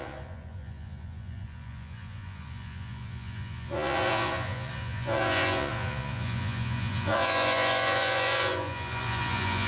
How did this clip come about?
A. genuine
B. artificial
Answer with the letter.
B